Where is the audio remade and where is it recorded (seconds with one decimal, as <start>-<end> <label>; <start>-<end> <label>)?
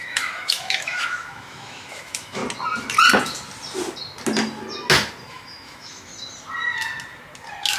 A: 0.0-2.4 remade; 2.4-5.3 recorded; 5.3-6.1 remade; 6.1-7.8 recorded